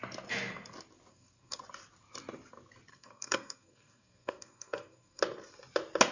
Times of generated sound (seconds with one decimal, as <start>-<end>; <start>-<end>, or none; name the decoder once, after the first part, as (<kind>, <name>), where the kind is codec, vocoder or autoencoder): 1.1-1.6 (codec, SNAC); 2.9-5.2